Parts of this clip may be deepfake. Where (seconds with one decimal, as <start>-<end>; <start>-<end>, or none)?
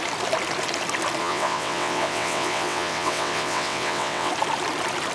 1.2-4.3